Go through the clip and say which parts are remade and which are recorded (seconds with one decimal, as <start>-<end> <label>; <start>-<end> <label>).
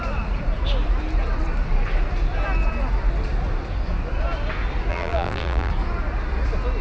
0.0-4.9 recorded; 4.9-5.7 remade; 5.7-6.8 recorded